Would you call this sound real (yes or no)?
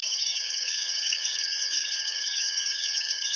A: no